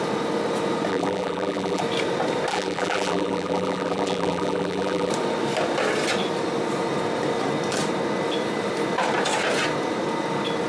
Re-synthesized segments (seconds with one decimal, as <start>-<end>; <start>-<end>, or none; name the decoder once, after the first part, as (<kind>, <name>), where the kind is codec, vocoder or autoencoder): 0.9-1.8 (vocoder, BigVGAN v2); 2.5-5.1